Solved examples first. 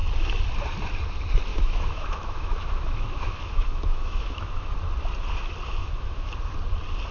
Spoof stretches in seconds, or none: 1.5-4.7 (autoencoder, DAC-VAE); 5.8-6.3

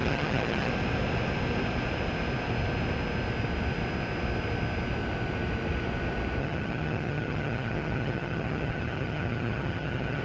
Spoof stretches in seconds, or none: 0.0-0.7 (vocoder, HiFi-GAN); 6.4-10.2

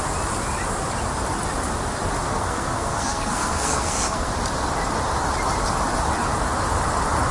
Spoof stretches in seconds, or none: 2.3-4.3 (codec, SNAC)

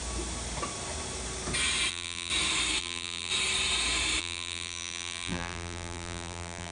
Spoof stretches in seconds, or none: 1.9-2.3 (vocoder, BigVGAN v2); 2.8-3.3; 4.2-6.7

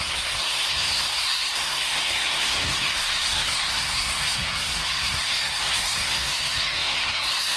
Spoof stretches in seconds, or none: 0.0-7.6 (codec, SNAC)